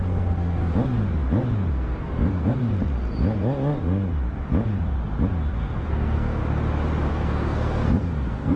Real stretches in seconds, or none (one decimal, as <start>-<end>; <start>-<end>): 0.6-1.7; 2.6-5.5; 6.4-7.1